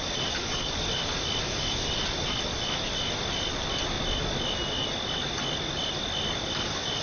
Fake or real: real